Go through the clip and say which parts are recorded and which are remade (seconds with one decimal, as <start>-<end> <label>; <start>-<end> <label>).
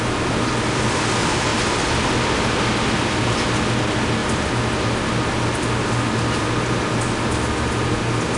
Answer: 0.0-8.4 recorded